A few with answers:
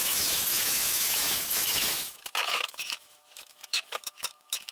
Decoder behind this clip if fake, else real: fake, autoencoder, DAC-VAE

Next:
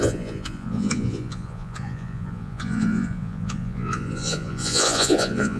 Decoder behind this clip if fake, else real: fake, vocoder, Vocos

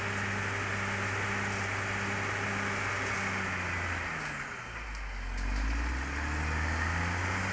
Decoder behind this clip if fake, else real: real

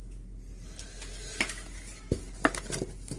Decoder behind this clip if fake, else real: real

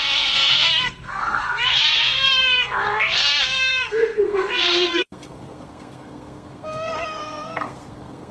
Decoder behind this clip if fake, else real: fake, codec, SNAC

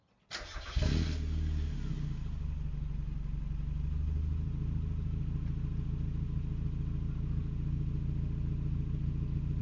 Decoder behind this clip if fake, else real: real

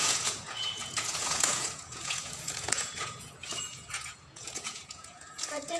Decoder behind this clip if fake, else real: fake, vocoder, Vocos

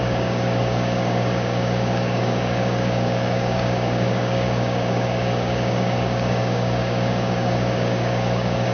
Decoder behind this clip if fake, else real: fake, codec, DAC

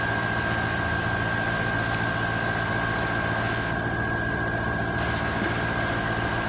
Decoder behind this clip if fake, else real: real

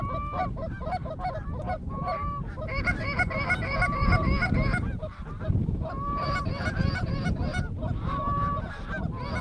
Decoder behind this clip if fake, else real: fake, vocoder, BigVGAN v2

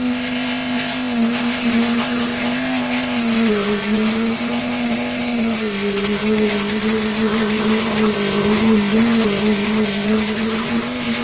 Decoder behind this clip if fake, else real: fake, codec, ZipCodec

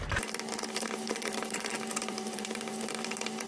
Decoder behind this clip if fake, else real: fake, vocoder, BigVGAN v2